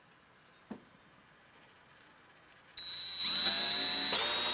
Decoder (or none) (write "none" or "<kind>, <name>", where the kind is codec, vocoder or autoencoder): none